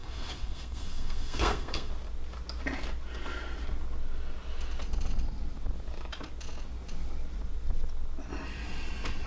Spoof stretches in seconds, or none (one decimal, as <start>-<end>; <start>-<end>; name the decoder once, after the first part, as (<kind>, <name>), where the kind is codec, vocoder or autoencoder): 0.0-1.9 (codec, SNAC)